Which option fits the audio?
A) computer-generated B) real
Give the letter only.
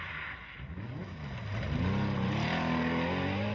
B